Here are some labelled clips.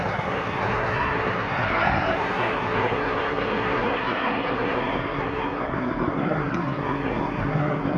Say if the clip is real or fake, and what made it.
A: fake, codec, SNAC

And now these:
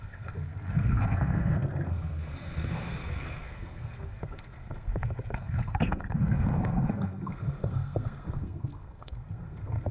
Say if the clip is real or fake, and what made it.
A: fake, codec, SNAC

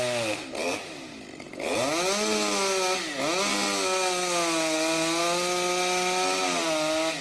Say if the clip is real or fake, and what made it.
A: real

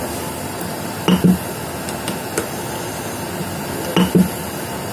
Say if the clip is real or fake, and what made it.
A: real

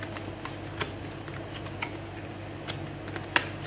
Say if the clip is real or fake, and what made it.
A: real